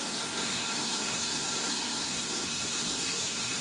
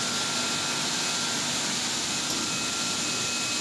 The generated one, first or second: first